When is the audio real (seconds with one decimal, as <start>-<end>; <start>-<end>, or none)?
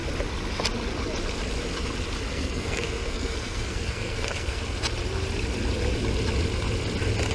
0.0-2.3; 4.6-7.3